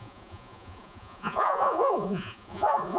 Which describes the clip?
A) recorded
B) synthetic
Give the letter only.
B